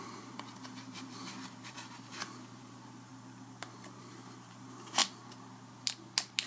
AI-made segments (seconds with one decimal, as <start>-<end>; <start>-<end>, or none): 0.0-3.1; 4.0-5.0